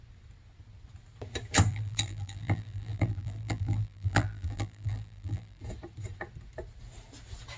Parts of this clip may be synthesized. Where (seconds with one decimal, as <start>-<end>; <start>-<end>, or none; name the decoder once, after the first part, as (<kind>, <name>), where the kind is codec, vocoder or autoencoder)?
1.7-5.6 (vocoder, BigVGAN v2)